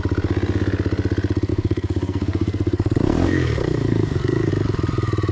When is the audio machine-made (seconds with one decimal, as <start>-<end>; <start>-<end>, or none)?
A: 1.5-4.5